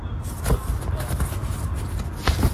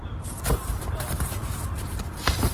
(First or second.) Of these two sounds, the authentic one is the first